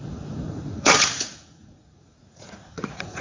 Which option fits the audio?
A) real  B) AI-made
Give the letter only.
B